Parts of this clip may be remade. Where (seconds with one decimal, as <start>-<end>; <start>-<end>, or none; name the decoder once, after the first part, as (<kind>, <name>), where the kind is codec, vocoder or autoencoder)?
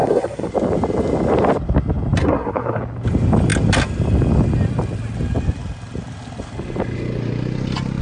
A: 0.0-0.5 (codec, SNAC); 2.2-2.8